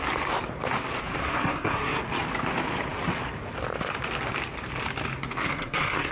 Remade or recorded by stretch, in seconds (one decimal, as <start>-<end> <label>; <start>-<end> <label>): 0.0-1.2 recorded; 1.2-2.0 remade; 2.0-5.4 recorded; 5.4-6.1 remade

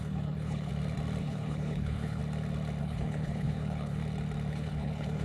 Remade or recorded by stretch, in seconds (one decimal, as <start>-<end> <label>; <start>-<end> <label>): 0.0-0.7 remade; 0.7-1.2 recorded; 1.2-2.2 remade; 2.2-2.8 recorded; 2.8-4.0 remade; 4.0-4.5 recorded; 4.5-5.2 remade

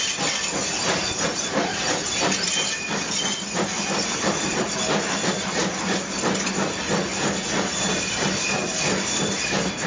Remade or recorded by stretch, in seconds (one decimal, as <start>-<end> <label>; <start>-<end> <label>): 0.0-9.9 recorded

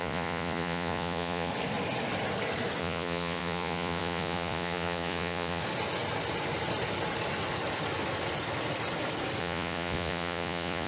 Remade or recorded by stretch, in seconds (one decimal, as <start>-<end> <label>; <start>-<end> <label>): 0.0-1.5 remade; 1.5-2.8 recorded; 2.8-5.6 remade; 5.6-9.4 recorded; 9.4-10.9 remade

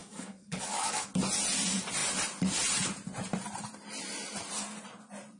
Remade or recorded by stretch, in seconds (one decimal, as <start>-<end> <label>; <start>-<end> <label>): 0.0-1.1 remade; 1.1-5.4 recorded

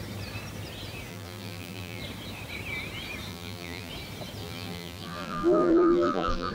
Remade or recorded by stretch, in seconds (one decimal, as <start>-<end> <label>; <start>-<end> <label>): 0.0-1.1 recorded; 1.1-2.0 remade; 2.0-3.3 recorded; 3.3-3.9 remade; 3.9-4.4 recorded; 4.4-6.5 remade